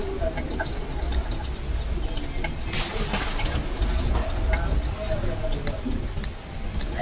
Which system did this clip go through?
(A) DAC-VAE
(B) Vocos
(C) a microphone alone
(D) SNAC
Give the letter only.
C